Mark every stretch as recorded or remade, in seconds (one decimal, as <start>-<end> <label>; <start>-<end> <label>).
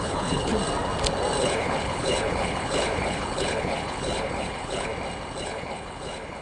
0.0-0.5 remade; 0.5-1.4 recorded; 1.4-4.9 remade; 4.9-5.4 recorded; 5.4-6.4 remade